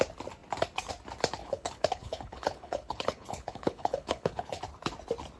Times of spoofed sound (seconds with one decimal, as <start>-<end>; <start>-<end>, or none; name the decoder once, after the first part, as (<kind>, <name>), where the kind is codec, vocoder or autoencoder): 1.4-4.6 (codec, HILCodec)